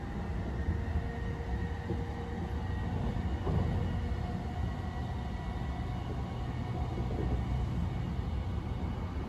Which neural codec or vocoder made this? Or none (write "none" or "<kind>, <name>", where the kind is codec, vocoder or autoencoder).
none